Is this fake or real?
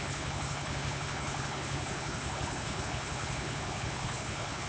fake